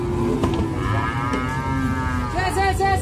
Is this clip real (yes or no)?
yes